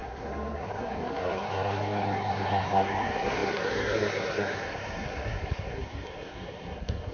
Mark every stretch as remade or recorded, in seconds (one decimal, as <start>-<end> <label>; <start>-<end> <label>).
0.0-7.1 remade